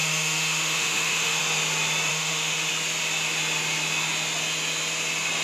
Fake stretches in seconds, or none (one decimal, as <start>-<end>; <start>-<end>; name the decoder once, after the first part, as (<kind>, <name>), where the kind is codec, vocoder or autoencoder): 0.0-1.4 (autoencoder, DAC-VAE); 2.1-2.7